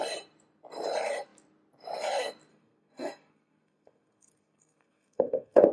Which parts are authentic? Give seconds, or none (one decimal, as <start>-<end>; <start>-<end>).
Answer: 0.0-2.5